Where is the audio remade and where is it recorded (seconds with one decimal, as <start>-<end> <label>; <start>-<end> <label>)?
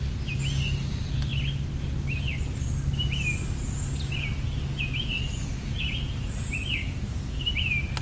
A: 0.0-6.8 recorded; 6.8-7.5 remade; 7.5-8.0 recorded